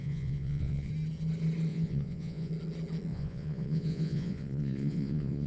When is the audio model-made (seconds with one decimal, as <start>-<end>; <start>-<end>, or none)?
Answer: 0.0-0.9; 1.7-2.5; 3.1-5.5